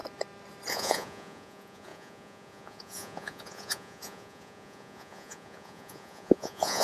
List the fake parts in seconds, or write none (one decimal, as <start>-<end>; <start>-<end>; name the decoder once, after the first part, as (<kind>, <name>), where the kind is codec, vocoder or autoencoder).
0.7-6.8 (vocoder, Vocos)